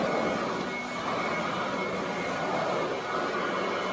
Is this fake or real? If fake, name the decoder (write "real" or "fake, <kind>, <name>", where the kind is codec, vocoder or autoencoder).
real